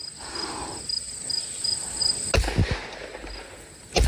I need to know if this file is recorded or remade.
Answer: recorded